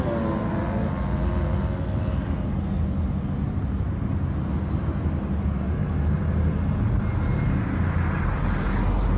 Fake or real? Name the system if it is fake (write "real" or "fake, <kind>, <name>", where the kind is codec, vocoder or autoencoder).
real